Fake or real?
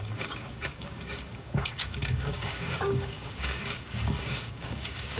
fake